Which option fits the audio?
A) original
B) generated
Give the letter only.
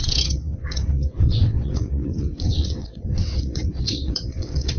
B